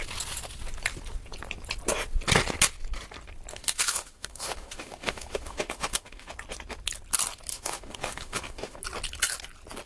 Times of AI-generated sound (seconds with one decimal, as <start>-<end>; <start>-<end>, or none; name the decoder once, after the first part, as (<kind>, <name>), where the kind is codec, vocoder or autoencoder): 3.5-6.3 (autoencoder, DAC-VAE); 7.5-8.8

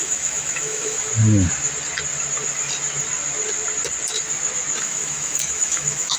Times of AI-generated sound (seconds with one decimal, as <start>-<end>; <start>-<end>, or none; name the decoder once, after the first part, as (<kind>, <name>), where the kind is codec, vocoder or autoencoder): 0.0-1.1 (autoencoder, DAC-VAE); 4.8-6.2

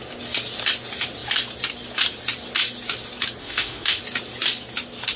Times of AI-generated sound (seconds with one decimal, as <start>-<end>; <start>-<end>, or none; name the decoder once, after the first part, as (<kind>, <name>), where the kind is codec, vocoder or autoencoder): 3.4-4.0 (autoencoder, DAC-VAE)

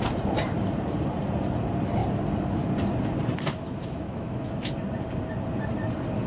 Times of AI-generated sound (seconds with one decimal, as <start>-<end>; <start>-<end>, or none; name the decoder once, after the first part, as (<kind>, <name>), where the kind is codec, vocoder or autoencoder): 3.7-4.7 (autoencoder, DAC-VAE)

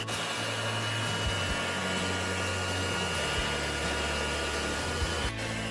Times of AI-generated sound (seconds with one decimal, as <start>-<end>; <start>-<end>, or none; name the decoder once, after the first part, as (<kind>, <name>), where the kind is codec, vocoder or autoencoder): none

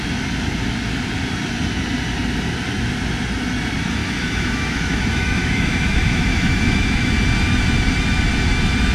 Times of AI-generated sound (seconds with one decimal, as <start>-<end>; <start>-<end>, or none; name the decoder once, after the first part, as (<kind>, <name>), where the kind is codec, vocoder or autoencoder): 4.0-7.1 (autoencoder, DAC-VAE)

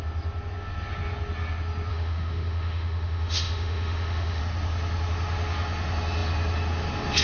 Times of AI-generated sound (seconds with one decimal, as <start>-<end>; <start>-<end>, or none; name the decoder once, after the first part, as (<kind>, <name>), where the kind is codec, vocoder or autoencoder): 1.9-4.4 (autoencoder, DAC-VAE)